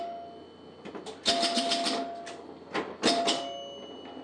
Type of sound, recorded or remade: recorded